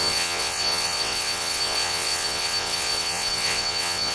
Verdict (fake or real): fake